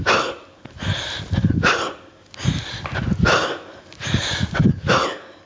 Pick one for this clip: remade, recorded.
recorded